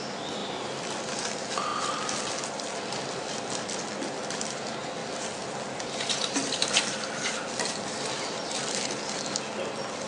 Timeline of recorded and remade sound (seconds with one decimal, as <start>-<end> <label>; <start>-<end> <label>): 0.0-10.1 recorded